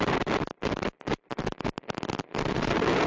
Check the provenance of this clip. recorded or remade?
recorded